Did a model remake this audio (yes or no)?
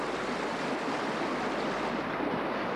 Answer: no